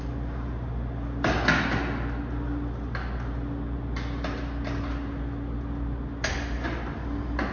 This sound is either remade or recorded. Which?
recorded